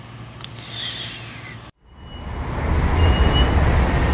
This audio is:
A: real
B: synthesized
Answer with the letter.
A